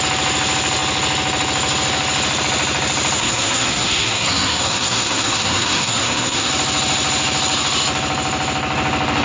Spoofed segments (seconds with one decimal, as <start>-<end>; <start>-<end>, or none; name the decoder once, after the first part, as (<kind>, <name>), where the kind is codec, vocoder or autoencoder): 3.2-6.5 (codec, SNAC)